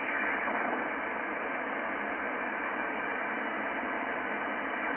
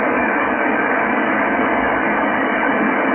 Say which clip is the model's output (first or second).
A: second